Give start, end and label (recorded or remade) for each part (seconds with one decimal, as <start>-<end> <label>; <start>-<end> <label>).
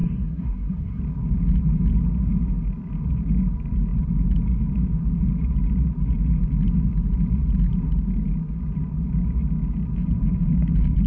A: 0.0-1.0 remade; 1.0-11.1 recorded